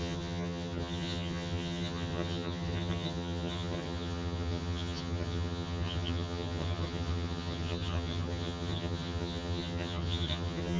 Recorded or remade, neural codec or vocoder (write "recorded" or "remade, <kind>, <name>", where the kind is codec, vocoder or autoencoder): remade, vocoder, HiFi-GAN